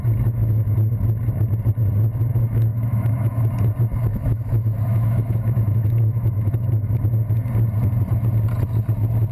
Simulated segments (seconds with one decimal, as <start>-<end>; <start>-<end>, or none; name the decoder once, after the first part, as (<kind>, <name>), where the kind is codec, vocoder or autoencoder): 2.7-3.5 (autoencoder, DAC-VAE); 4.1-7.0